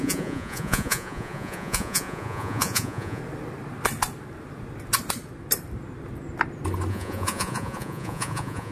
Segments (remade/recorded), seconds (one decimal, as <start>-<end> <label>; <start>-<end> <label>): 0.0-3.2 remade; 3.2-6.9 recorded; 6.9-8.7 remade